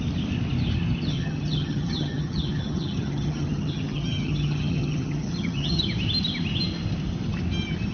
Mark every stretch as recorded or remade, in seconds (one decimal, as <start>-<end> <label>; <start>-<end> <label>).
0.0-1.1 recorded; 1.1-5.8 remade; 5.8-7.9 recorded